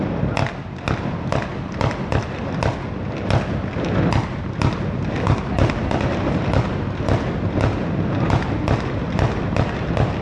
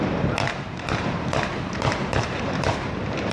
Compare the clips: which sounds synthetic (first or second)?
second